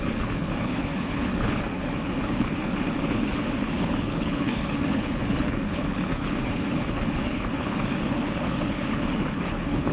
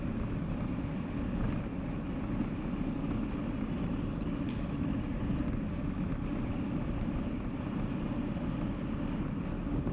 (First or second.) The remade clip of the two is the first